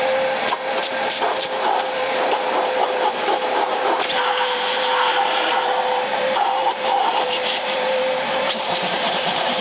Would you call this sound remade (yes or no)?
yes